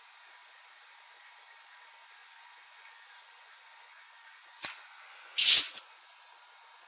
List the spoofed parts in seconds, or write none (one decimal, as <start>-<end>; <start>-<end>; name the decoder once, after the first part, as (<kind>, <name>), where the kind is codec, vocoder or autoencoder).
2.2-6.3 (vocoder, Vocos)